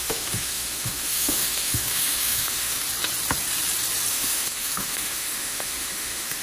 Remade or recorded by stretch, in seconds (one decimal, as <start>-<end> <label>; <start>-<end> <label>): 0.0-2.8 remade; 2.8-4.1 recorded; 4.1-6.4 remade